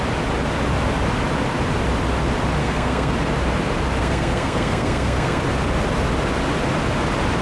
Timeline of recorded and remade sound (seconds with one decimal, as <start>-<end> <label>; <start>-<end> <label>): 0.0-2.6 recorded; 2.6-3.1 remade; 3.1-4.0 recorded; 4.0-5.4 remade; 5.4-7.4 recorded